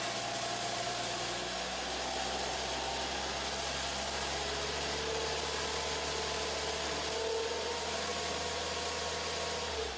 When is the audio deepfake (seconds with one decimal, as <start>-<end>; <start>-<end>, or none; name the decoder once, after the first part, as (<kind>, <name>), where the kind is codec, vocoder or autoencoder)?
none